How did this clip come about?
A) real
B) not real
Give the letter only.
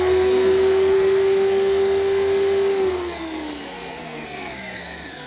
B